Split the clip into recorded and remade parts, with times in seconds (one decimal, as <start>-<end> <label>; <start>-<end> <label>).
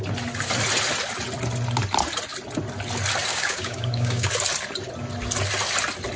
0.0-3.3 recorded; 3.3-4.3 remade; 4.3-6.2 recorded